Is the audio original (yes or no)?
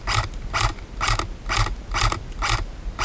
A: yes